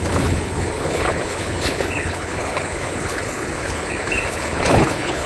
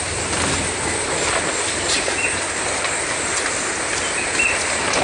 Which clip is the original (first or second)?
second